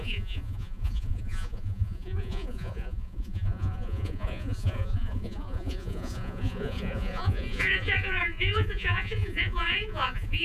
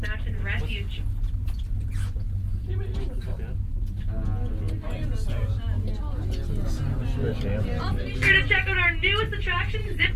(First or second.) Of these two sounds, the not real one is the first